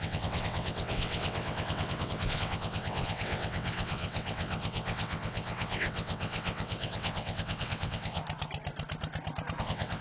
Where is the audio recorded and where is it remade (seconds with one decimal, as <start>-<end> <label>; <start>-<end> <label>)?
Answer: 0.0-8.2 remade; 8.2-9.6 recorded; 9.6-10.0 remade